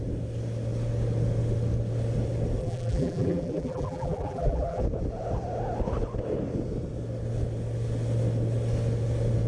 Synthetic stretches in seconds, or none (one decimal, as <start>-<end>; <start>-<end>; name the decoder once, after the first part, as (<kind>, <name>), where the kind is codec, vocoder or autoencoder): 2.6-4.8 (vocoder, BigVGAN v2)